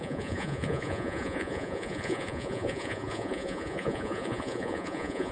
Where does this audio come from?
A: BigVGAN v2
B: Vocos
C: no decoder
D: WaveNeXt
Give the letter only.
B